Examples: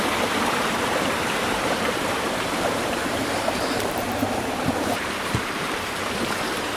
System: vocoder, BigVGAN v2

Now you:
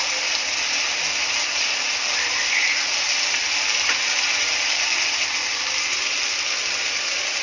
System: none